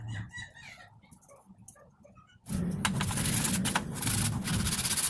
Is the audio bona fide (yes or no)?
yes